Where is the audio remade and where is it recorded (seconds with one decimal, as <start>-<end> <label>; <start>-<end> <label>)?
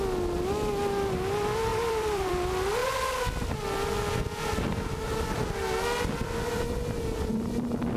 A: 0.0-1.7 recorded; 1.7-2.3 remade; 2.3-8.0 recorded